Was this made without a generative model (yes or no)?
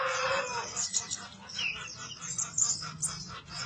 yes